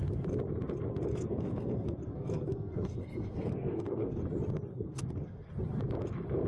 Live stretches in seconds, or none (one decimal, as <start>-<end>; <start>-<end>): 0.0-1.1; 4.2-4.7; 5.4-6.5